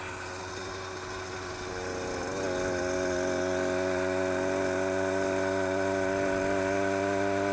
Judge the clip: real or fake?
real